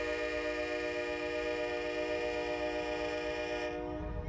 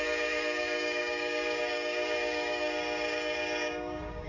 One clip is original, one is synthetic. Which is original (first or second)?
first